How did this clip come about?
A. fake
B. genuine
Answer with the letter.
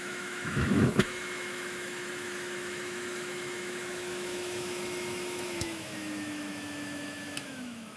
A